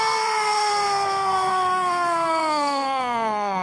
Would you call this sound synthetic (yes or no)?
yes